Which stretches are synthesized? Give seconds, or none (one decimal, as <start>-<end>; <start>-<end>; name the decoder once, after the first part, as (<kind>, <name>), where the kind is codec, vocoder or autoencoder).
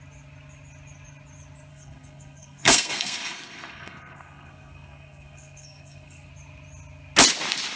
1.7-6.3 (codec, SNAC)